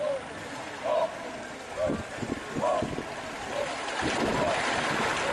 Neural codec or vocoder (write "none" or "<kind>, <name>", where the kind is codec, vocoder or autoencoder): none